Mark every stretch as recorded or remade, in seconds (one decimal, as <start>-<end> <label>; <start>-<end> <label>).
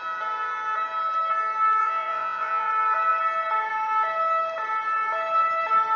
0.0-1.8 recorded; 1.8-2.7 remade; 2.7-6.0 recorded